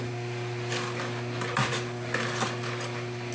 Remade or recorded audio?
recorded